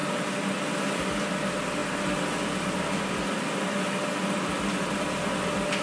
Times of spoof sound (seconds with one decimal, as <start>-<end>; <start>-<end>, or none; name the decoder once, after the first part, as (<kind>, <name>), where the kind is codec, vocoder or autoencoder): none